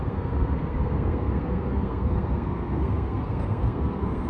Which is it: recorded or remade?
remade